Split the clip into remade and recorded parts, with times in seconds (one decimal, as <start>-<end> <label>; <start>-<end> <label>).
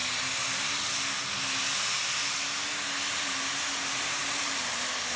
0.0-3.1 recorded; 3.1-5.2 remade